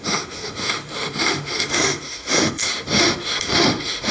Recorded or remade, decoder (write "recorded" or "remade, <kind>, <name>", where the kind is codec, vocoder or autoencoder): remade, autoencoder, DAC-VAE